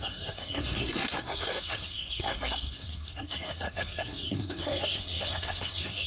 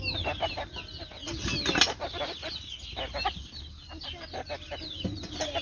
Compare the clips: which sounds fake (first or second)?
first